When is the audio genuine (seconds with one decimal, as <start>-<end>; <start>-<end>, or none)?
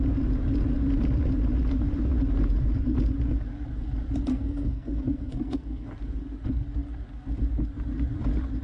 0.0-4.3; 5.9-8.6